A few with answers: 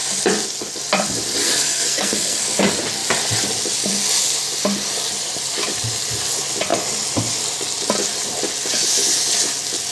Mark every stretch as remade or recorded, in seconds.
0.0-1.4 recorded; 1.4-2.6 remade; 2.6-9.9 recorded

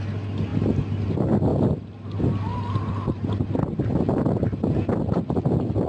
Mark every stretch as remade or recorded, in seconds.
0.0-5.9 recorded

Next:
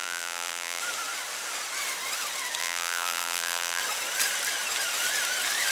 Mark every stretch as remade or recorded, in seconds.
0.0-0.8 remade; 0.8-2.6 recorded; 2.6-3.8 remade; 3.8-5.7 recorded

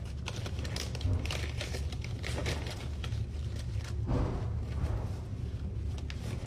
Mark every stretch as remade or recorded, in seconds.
0.0-6.5 recorded

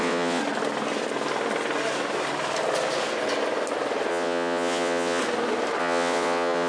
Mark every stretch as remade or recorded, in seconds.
0.0-0.4 remade; 0.4-4.1 recorded; 4.1-5.2 remade; 5.2-5.8 recorded; 5.8-6.7 remade

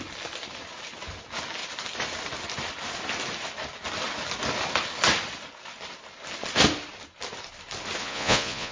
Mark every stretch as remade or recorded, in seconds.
0.0-8.0 recorded; 8.0-8.7 remade

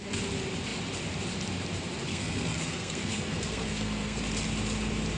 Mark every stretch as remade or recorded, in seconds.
0.0-2.1 recorded; 2.1-4.2 remade; 4.2-5.2 recorded